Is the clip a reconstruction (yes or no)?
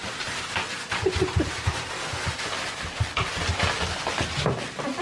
no